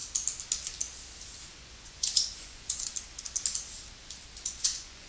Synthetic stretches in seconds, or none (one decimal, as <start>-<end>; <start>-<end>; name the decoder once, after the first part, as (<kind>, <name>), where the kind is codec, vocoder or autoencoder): 1.5-2.9 (vocoder, Vocos); 4.4-5.1